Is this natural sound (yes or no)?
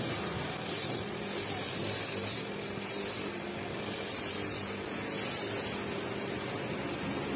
yes